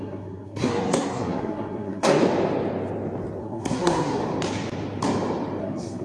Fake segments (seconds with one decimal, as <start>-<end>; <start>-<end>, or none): 0.0-2.2; 3.4-4.2; 5.6-6.0